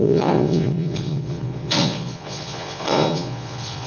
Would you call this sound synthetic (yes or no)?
yes